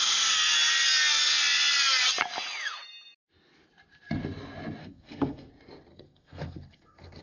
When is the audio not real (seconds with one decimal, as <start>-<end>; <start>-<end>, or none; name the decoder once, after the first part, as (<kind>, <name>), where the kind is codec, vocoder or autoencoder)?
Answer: 4.8-5.5 (codec, SNAC); 5.9-7.2